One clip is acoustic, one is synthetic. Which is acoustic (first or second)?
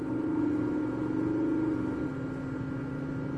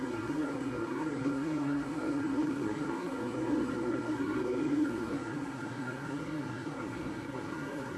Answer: first